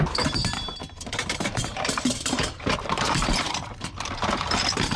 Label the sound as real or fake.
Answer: fake